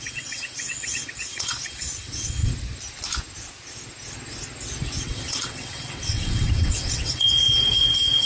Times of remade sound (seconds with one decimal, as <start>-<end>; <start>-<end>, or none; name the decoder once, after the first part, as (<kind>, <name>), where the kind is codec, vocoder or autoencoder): 0.0-2.5 (vocoder, WaveNeXt); 5.0-8.3